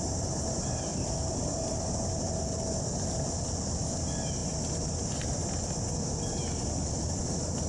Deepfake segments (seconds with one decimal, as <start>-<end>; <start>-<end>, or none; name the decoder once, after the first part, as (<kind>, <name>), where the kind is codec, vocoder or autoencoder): none